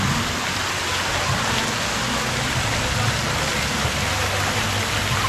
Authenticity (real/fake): real